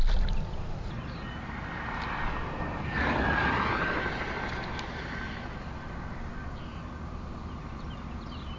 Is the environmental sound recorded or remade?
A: recorded